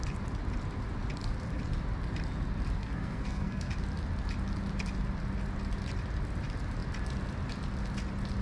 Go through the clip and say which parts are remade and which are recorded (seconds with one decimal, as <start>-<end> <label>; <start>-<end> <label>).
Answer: 0.0-2.8 recorded; 2.8-3.7 remade; 3.7-8.4 recorded